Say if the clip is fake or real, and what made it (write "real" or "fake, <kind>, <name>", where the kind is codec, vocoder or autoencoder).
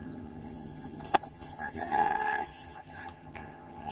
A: fake, vocoder, HiFi-GAN